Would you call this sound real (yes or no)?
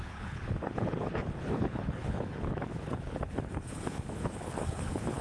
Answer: no